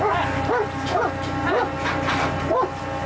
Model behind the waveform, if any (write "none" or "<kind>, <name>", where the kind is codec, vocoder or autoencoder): none